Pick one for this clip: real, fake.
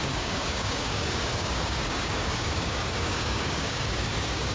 fake